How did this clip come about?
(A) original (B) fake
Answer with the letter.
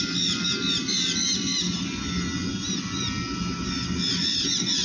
A